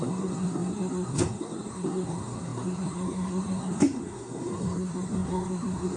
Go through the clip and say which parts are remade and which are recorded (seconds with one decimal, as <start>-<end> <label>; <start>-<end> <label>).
0.0-6.0 remade